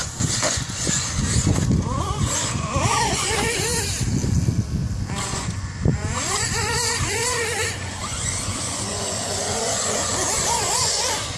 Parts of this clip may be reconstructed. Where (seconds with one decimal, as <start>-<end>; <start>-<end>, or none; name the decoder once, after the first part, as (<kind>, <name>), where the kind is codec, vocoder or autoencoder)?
0.0-3.7 (vocoder, Vocos); 5.2-11.4